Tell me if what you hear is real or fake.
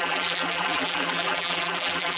fake